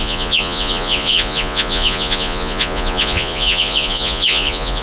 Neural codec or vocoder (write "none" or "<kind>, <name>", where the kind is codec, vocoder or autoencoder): vocoder, Vocos